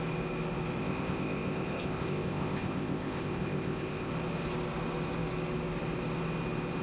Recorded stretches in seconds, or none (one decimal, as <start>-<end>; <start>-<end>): 0.0-0.8; 4.1-6.8